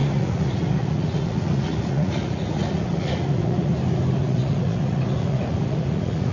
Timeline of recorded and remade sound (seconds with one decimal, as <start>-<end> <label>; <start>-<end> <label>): 0.0-3.7 remade; 3.7-4.2 recorded; 4.2-6.3 remade